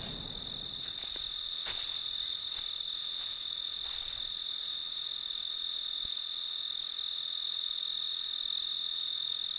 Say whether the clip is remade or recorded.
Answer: recorded